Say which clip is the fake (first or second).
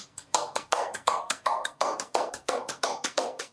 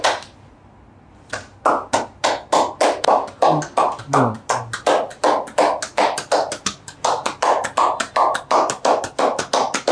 first